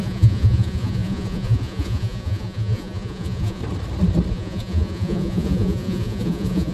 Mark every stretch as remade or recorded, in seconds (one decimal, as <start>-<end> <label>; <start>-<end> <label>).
0.0-3.6 remade; 3.6-4.3 recorded; 4.3-6.7 remade